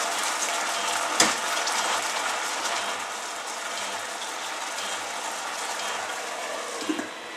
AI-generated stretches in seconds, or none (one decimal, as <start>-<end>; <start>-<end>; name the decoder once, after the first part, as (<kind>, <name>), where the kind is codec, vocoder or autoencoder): none